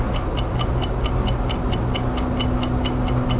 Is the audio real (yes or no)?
yes